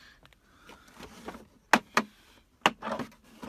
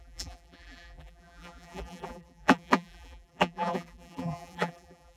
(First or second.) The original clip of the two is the first